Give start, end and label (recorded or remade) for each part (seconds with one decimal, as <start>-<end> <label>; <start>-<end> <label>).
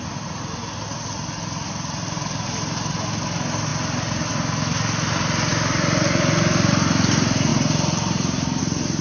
0.0-3.7 recorded; 3.7-4.3 remade; 4.3-5.5 recorded; 5.5-6.7 remade; 6.7-9.0 recorded